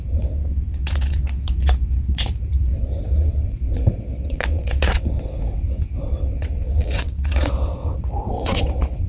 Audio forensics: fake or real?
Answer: fake